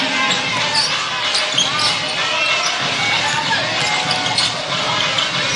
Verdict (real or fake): real